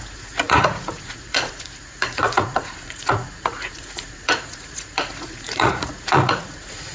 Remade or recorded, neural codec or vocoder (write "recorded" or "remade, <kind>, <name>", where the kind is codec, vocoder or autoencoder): remade, vocoder, Vocos